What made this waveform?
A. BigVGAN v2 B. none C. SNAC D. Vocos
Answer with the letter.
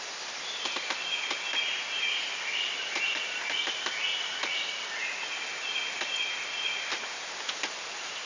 B